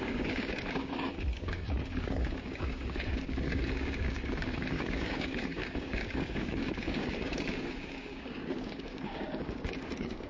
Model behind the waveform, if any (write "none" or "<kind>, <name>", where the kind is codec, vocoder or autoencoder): codec, DAC